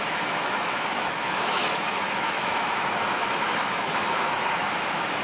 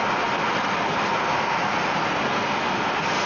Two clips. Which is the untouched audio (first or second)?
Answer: second